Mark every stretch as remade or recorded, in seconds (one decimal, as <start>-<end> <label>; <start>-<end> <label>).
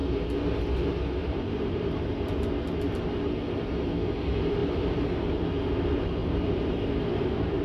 0.0-0.6 remade; 0.6-1.2 recorded; 1.2-2.0 remade; 2.0-4.6 recorded; 4.6-5.3 remade; 5.3-6.2 recorded; 6.2-7.6 remade